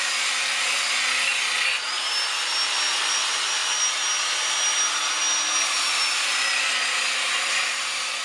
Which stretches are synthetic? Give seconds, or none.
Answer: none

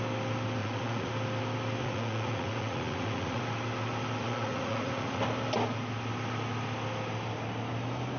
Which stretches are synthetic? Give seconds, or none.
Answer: 0.6-1.1 (vocoder, Vocos); 1.8-3.4; 4.2-5.2

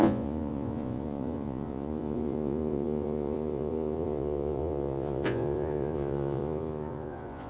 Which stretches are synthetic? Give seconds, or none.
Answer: 0.0-7.5 (vocoder, Vocos)

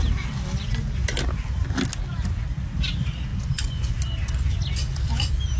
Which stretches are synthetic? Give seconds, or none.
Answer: 3.3-3.9 (vocoder, Vocos)

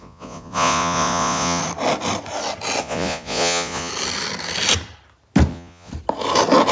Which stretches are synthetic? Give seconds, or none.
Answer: 0.0-1.6 (vocoder, Vocos); 2.8-3.9; 5.5-5.9

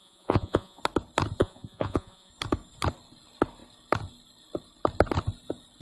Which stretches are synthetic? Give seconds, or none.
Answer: 0.0-0.8 (vocoder, Vocos); 1.4-2.3

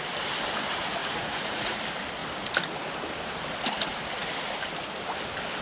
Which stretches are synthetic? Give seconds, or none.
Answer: 1.0-1.8 (vocoder, Vocos)

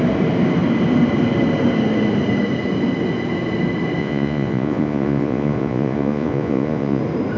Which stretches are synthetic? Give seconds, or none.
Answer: 4.0-7.0 (vocoder, Vocos)